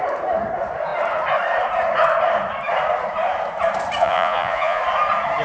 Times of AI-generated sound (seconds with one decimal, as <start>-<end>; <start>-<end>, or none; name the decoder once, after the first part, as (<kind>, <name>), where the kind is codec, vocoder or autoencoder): 4.0-4.8 (vocoder, Vocos)